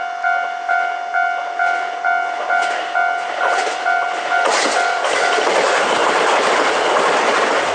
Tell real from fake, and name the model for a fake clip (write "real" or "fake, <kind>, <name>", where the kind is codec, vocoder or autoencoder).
real